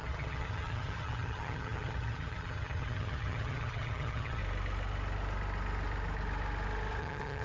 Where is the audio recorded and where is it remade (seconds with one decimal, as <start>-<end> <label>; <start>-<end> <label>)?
0.0-4.4 remade; 4.4-7.0 recorded; 7.0-7.4 remade